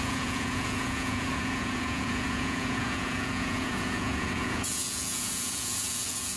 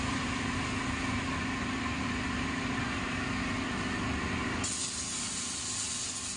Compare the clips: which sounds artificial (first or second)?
first